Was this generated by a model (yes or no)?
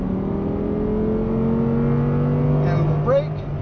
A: no